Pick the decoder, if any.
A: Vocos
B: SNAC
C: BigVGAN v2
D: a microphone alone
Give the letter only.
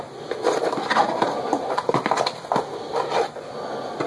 D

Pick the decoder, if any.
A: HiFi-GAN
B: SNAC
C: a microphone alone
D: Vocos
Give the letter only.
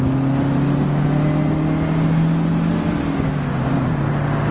C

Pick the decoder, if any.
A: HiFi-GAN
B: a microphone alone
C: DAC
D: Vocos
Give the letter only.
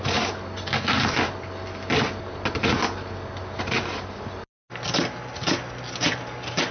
B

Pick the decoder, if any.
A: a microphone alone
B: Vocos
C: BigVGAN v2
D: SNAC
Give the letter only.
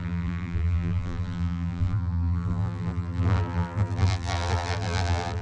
C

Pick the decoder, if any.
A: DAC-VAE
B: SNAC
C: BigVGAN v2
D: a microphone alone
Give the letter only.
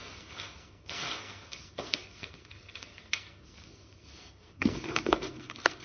B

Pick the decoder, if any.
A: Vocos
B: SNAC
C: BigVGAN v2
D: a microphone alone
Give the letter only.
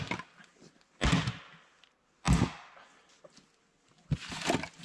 D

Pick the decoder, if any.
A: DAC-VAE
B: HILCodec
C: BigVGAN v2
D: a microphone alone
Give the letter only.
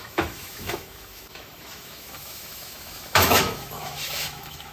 A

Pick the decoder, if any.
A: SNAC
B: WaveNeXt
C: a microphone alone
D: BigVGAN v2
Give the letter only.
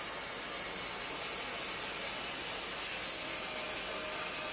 C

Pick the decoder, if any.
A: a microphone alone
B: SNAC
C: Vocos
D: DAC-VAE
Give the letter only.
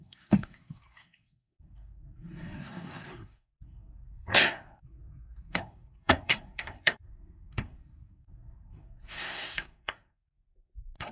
B